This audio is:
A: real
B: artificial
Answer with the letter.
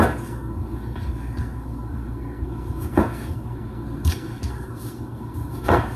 B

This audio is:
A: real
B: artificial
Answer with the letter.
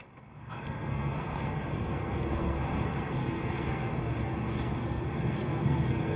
B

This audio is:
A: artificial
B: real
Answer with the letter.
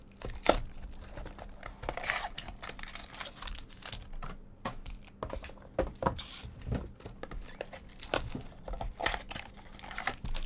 B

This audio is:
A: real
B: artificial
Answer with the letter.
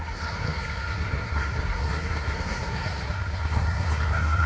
B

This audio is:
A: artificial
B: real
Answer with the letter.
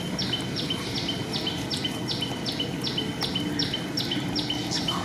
B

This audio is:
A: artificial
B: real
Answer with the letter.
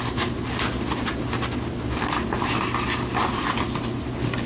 B